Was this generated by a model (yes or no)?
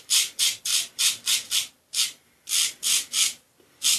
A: no